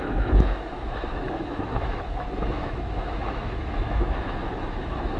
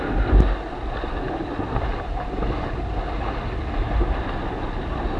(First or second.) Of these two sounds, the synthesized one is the first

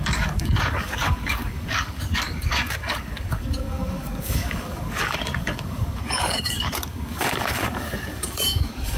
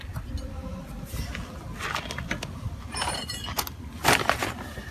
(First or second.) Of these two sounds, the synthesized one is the first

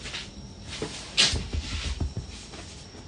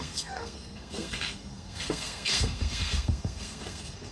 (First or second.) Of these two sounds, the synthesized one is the second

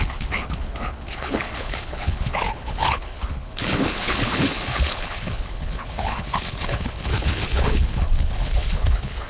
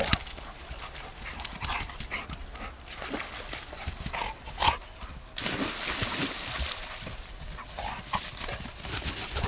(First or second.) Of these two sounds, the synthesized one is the first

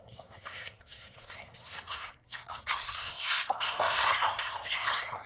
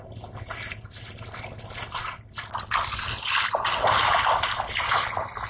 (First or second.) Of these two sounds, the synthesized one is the first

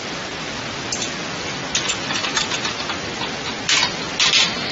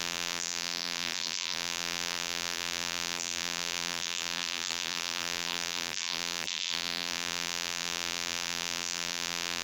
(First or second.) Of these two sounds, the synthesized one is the second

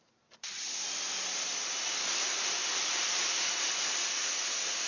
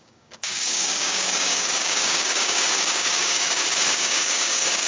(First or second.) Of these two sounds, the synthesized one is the second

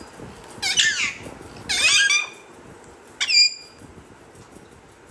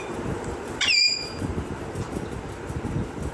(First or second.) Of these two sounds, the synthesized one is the second